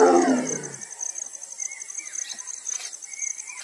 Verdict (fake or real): real